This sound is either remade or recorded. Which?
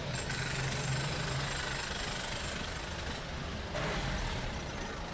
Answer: recorded